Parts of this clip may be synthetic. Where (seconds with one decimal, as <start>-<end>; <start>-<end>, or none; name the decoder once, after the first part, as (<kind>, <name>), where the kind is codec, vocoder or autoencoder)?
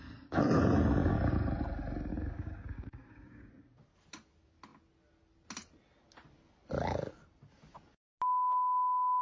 2.1-3.5 (codec, DAC)